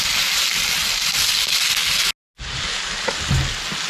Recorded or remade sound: recorded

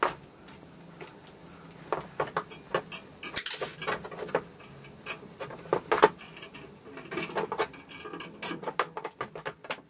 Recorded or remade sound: recorded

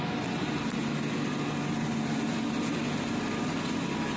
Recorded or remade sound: recorded